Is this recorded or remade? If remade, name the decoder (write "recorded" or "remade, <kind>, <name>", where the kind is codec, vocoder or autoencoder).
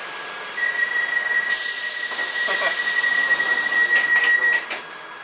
recorded